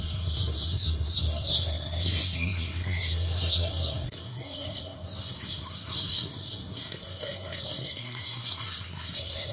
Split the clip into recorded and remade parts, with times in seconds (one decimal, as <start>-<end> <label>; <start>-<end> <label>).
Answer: 0.0-9.5 remade